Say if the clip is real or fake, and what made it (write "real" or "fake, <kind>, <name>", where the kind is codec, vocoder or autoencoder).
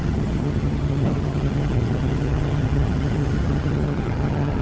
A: fake, vocoder, HiFi-GAN